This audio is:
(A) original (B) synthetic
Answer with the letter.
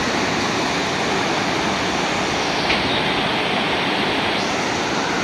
A